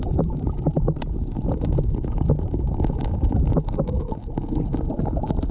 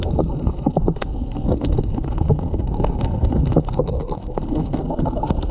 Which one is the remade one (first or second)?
second